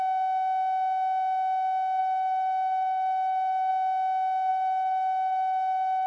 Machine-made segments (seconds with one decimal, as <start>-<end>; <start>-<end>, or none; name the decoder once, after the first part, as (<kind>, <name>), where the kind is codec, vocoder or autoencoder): 2.0-3.7 (autoencoder, DAC-VAE); 4.5-6.1